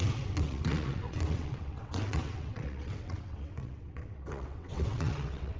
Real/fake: fake